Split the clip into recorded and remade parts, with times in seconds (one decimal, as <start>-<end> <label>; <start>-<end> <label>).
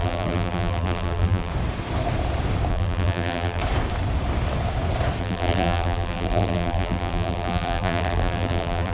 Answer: 0.0-1.5 remade; 1.5-2.7 recorded; 2.7-3.6 remade; 3.6-5.2 recorded; 5.2-8.9 remade